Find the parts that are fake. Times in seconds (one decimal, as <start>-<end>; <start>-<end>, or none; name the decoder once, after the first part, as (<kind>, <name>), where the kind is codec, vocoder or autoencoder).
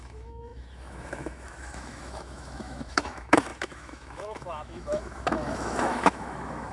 0.0-6.7 (autoencoder, DAC-VAE)